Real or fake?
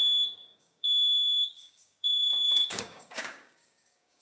fake